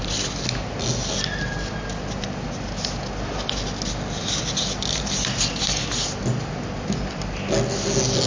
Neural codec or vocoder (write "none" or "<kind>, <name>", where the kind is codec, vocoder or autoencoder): none